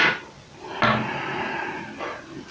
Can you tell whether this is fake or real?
real